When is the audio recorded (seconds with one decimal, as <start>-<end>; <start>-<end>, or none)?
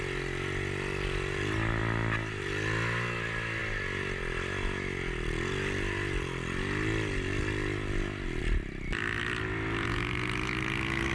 0.0-11.1